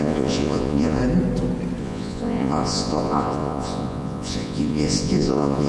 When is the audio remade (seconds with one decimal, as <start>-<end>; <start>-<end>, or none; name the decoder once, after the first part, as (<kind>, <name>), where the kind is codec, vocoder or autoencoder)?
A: 0.0-1.0 (vocoder, Vocos); 1.8-5.7